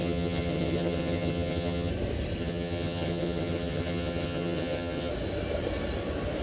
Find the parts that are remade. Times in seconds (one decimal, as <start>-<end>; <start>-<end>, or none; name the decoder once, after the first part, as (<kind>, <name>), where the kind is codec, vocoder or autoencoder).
0.0-1.9 (vocoder, HiFi-GAN); 2.4-5.1